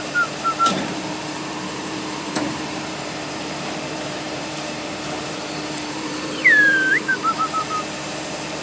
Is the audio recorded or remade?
remade